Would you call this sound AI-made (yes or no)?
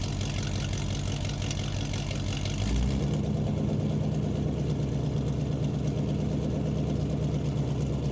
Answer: no